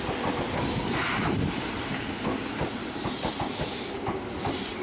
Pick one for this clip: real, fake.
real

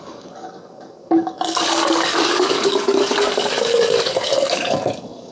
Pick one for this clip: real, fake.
fake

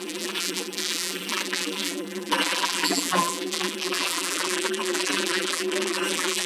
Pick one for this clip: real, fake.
fake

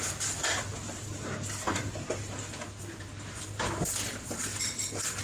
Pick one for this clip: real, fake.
real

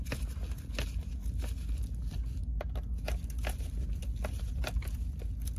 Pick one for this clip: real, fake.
real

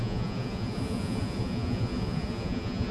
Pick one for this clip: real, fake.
fake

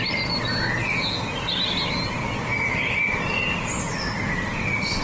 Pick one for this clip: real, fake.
real